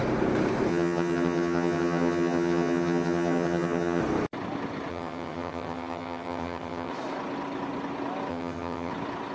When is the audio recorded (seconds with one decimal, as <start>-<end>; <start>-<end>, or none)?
0.0-0.7; 4.0-4.9; 6.9-8.3; 8.9-9.3